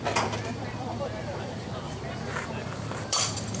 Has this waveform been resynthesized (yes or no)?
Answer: yes